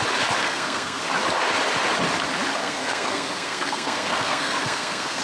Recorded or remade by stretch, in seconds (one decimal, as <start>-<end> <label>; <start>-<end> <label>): 0.0-0.4 recorded; 0.4-1.0 remade; 1.0-2.6 recorded; 2.6-5.2 remade